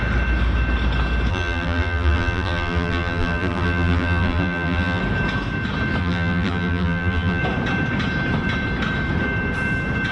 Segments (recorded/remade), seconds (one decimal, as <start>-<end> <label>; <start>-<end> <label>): 0.0-1.3 recorded; 1.3-5.0 remade; 5.0-6.0 recorded; 6.0-7.4 remade; 7.4-10.1 recorded